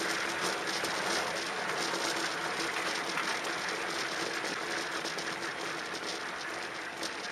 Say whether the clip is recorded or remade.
recorded